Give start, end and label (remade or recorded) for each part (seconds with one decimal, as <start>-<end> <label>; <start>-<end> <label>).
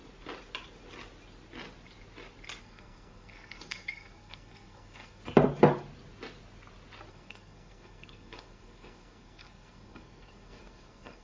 0.0-2.6 recorded; 2.6-5.2 remade; 5.2-7.1 recorded; 7.1-11.2 remade